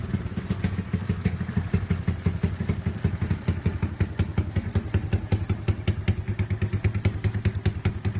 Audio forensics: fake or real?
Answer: real